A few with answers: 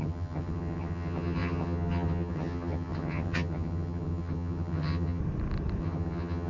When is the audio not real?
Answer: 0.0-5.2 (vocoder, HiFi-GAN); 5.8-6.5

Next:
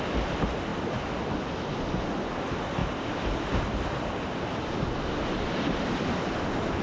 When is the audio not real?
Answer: none

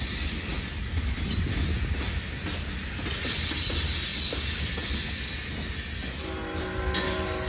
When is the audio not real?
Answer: none

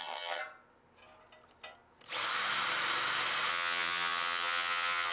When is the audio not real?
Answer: 0.0-0.4 (vocoder, HiFi-GAN); 3.5-5.1